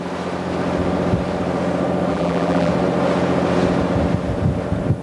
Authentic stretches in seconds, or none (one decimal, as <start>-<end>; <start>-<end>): 0.0-2.1; 2.7-5.0